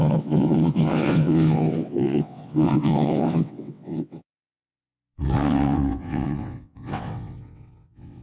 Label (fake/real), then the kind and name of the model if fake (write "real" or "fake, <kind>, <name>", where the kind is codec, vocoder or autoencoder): fake, vocoder, WaveNeXt